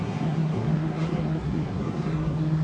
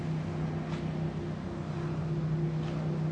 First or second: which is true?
second